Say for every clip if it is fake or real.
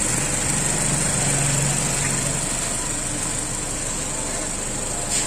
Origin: real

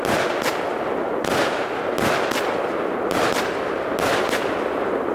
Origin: real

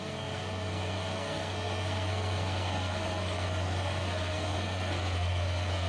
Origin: fake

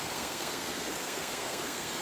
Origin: fake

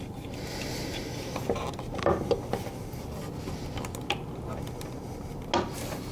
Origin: real